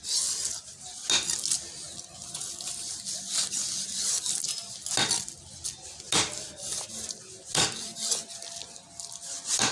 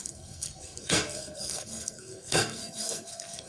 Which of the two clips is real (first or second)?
first